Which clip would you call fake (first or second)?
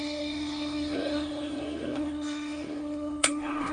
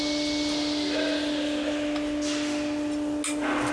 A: first